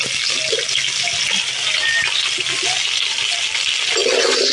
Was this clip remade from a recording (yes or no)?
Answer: no